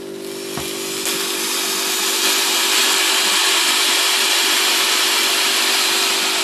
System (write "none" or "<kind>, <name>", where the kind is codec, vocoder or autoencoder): none